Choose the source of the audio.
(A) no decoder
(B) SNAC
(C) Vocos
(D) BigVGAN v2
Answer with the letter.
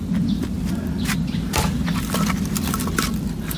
A